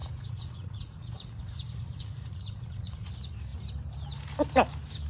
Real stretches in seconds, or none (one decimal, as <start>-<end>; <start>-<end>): 3.1-5.1